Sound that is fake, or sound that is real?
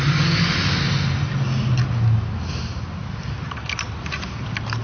real